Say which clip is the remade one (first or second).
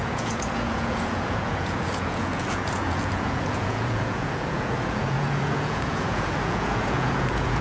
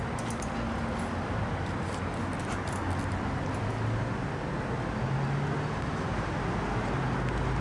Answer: first